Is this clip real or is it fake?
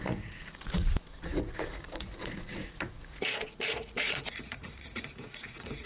fake